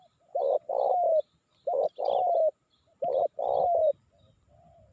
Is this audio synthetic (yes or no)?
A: no